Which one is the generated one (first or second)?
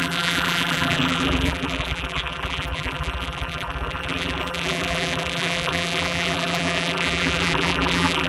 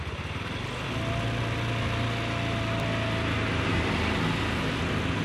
first